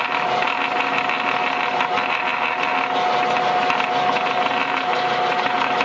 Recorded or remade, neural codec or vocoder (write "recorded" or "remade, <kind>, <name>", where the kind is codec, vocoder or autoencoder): recorded